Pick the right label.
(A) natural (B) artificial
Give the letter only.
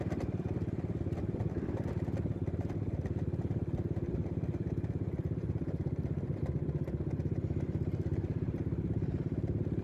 A